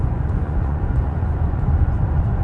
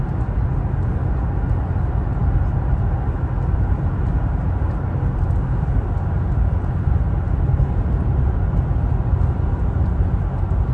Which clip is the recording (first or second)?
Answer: second